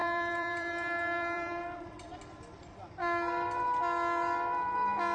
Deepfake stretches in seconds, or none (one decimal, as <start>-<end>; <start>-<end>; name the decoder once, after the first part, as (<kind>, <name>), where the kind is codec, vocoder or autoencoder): 0.0-2.1 (vocoder, BigVGAN v2)